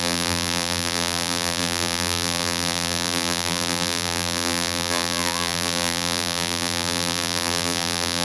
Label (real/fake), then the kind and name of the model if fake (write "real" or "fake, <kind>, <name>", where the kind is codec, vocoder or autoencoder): fake, vocoder, BigVGAN v2